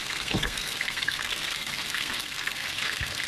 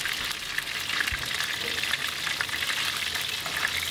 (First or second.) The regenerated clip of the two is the first